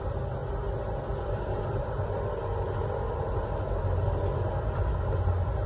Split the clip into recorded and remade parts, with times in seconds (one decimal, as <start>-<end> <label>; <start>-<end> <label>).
0.0-5.7 recorded